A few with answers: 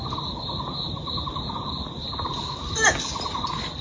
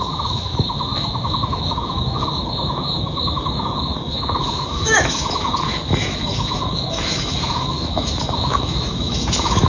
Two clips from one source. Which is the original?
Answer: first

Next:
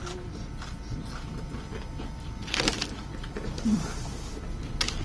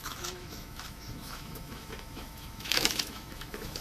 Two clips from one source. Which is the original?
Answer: first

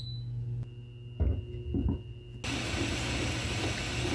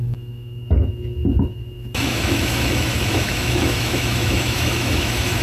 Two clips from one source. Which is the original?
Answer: first